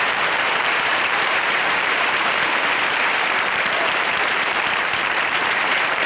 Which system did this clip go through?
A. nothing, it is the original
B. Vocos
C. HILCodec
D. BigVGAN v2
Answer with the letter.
D